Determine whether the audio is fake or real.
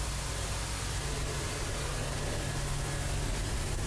real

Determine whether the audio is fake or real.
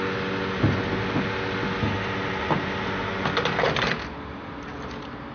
real